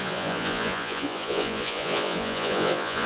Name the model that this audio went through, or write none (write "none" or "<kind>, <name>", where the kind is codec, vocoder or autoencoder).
vocoder, Vocos